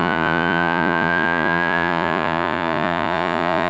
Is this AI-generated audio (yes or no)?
yes